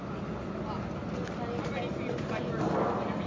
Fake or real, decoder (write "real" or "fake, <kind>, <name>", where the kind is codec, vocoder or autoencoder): real